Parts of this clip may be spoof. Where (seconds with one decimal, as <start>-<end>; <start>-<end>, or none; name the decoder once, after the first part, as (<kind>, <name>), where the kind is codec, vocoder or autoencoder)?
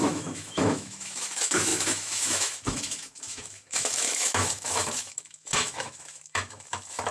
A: 0.0-7.1 (autoencoder, DAC-VAE)